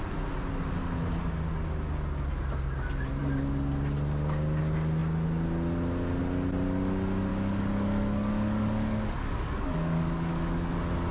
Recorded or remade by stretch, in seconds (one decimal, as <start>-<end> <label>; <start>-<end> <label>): 0.0-7.3 recorded; 7.3-10.7 remade; 10.7-11.1 recorded